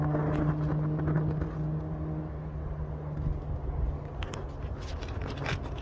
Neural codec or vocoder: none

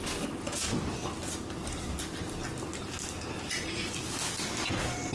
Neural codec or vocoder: none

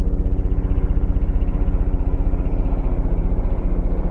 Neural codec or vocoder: vocoder, BigVGAN v2